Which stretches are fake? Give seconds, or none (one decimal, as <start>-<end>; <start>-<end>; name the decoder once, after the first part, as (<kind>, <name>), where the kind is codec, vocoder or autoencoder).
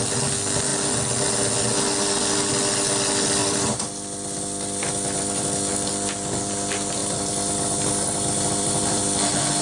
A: 3.4-5.7 (vocoder, BigVGAN v2); 7.0-9.0